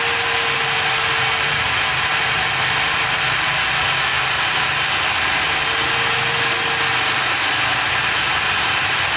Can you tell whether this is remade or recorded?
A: recorded